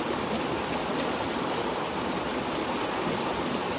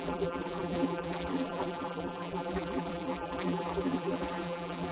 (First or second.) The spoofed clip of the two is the second